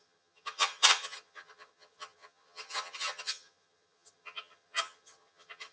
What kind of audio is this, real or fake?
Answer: fake